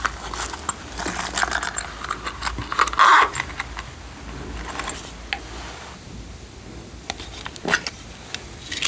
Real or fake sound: real